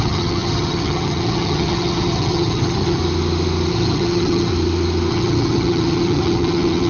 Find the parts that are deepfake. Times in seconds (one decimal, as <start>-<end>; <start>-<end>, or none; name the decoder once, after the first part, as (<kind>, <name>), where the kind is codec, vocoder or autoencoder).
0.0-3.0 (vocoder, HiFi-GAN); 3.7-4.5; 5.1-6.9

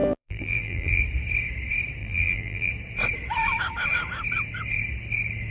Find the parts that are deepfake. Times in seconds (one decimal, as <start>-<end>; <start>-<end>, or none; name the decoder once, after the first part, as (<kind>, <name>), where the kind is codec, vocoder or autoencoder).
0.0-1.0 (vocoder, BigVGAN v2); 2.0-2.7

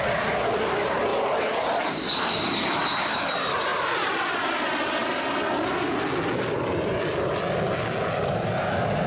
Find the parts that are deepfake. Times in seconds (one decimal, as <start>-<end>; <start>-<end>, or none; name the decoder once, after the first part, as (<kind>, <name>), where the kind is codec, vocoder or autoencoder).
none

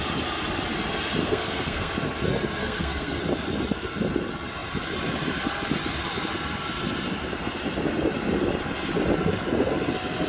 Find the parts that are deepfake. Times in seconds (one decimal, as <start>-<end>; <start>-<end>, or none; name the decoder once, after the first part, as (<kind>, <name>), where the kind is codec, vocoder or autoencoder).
1.2-1.9 (codec, SNAC); 2.6-3.2

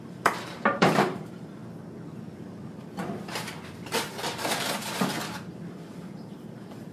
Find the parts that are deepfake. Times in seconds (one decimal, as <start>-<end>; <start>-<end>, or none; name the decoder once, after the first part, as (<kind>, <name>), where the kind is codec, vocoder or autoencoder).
0.0-1.6 (vocoder, BigVGAN v2); 5.7-6.9

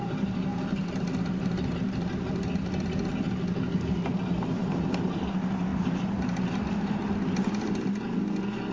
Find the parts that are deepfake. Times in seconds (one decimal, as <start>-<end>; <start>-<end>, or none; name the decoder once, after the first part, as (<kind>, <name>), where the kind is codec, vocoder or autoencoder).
none

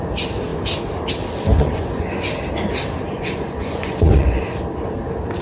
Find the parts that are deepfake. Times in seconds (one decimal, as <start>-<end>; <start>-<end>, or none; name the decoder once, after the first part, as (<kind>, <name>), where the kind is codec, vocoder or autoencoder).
1.5-2.2 (vocoder, Vocos); 3.1-4.4